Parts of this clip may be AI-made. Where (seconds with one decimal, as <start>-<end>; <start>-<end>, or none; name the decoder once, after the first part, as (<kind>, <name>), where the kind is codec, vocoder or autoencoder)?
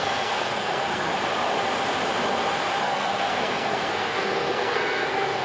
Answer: 0.0-1.1 (codec, SNAC); 2.8-5.4